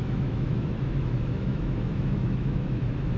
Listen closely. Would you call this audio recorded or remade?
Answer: remade